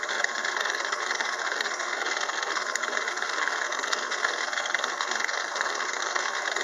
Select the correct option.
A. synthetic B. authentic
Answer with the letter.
A